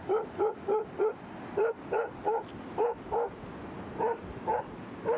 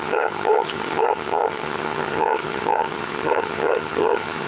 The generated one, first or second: second